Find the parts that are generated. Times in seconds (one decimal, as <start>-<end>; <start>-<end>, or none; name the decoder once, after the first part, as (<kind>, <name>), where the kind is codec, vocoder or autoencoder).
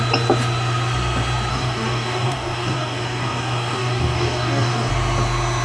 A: 1.5-4.9 (codec, DAC)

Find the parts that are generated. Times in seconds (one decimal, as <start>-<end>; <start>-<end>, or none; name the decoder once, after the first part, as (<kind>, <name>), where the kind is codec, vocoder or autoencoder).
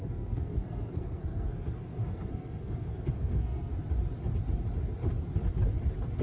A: 0.0-3.7 (codec, SNAC)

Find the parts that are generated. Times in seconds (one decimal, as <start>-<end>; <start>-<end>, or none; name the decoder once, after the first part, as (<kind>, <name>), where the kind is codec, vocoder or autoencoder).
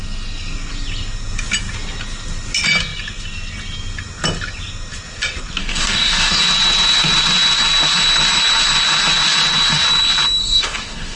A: 5.6-6.4 (codec, DAC); 10.4-11.2